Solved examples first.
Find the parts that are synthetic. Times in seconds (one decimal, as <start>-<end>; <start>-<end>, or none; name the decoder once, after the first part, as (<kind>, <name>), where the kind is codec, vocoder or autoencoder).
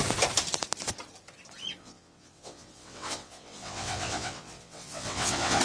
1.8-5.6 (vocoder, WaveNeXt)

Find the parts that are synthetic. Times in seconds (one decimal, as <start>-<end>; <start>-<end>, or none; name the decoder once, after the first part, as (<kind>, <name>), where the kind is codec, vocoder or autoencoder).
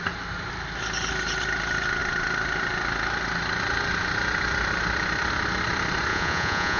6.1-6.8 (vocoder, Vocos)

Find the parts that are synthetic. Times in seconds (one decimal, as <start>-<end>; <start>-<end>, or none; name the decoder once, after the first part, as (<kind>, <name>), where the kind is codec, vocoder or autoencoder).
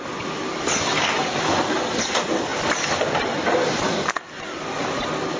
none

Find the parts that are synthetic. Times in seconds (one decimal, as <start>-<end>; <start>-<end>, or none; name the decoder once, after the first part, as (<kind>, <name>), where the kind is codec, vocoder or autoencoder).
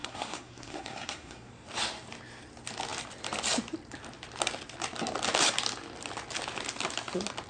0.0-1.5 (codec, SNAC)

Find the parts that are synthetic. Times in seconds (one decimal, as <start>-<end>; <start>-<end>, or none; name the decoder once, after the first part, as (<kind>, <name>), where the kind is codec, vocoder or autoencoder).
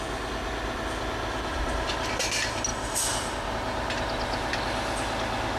none